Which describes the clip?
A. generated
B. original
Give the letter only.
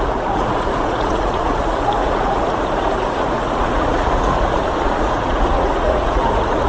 A